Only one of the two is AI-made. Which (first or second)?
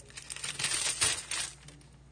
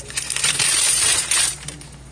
second